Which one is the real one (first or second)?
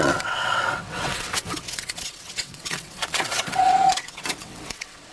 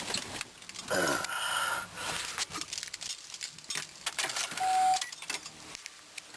second